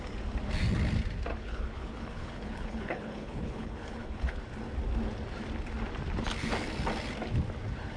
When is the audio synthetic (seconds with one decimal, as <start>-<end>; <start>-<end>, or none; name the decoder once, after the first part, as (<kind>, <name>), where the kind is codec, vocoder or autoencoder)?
1.3-4.4 (codec, HILCodec)